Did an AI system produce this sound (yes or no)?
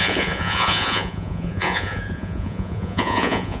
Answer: yes